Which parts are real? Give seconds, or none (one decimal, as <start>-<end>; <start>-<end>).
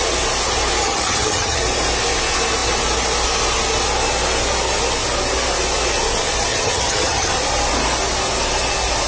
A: 0.0-0.8; 1.6-6.5; 7.3-9.1